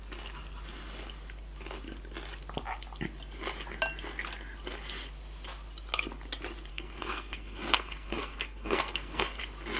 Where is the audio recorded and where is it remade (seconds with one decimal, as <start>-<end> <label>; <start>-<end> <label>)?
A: 0.0-6.7 recorded; 6.7-9.4 remade; 9.4-9.8 recorded